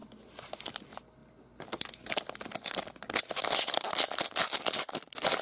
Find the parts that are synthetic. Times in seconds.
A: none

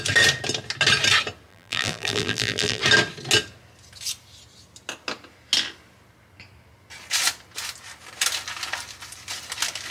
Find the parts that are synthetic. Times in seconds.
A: 1.5-2.8 (vocoder, BigVGAN v2)

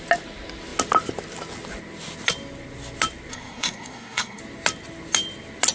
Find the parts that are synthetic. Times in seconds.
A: 3.3-4.4 (codec, SNAC)

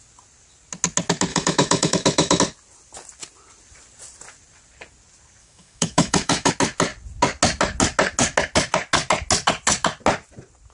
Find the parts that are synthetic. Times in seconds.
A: 1.3-2.4 (autoencoder, DAC-VAE); 5.4-6.5

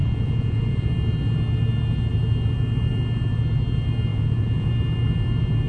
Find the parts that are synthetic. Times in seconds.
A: 0.0-0.9 (vocoder, Vocos); 4.1-4.7

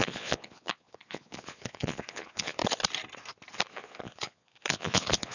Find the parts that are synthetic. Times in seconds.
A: 0.0-2.6 (vocoder, Vocos); 3.7-5.3

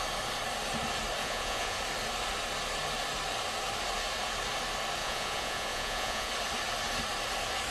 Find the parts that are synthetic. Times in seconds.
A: 1.2-1.8 (vocoder, Vocos); 5.0-6.3

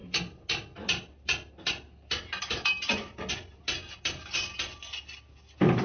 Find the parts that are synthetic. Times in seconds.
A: none